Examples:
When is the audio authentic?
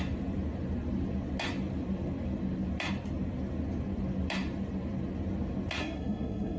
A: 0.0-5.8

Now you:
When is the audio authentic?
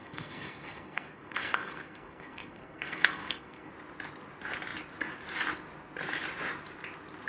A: 3.7-7.3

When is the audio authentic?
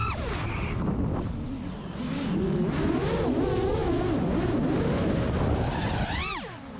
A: 0.0-6.8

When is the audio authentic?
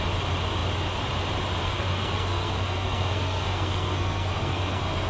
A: 0.0-1.6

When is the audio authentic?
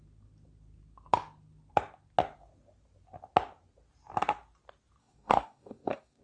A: 0.0-5.0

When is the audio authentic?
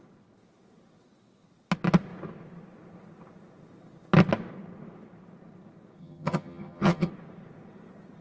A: 0.0-6.0; 7.1-8.2